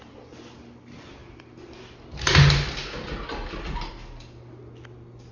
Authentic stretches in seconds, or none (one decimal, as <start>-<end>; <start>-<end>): 0.0-5.3